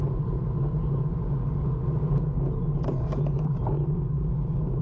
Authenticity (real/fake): real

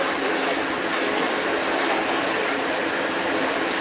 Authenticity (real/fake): real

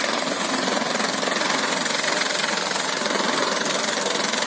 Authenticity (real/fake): real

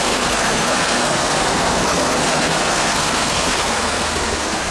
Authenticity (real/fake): fake